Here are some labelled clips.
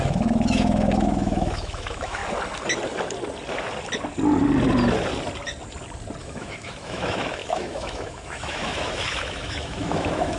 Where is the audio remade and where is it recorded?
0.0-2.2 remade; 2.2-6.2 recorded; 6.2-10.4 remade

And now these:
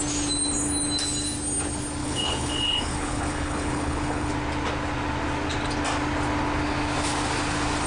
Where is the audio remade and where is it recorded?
0.0-2.0 recorded; 2.0-4.3 remade; 4.3-7.9 recorded

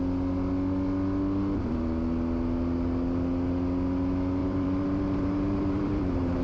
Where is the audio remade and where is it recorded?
0.0-4.4 recorded; 4.4-6.4 remade

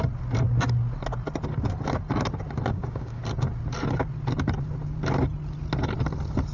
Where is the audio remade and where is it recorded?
0.0-2.7 recorded; 2.7-3.2 remade; 3.2-6.5 recorded

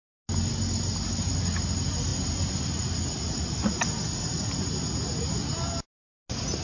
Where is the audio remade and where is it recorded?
0.0-6.6 recorded